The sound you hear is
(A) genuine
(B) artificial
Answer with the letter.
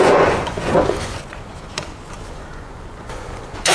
B